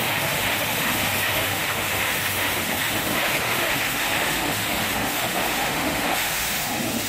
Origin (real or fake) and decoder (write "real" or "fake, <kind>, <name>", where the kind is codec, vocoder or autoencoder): fake, autoencoder, DAC-VAE